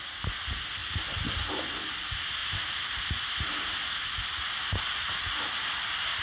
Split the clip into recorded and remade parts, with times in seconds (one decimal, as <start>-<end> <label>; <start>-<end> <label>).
0.0-0.8 recorded; 0.8-1.5 remade; 1.5-6.2 recorded